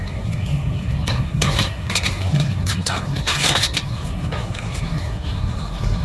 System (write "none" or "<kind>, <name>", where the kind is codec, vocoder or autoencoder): codec, SNAC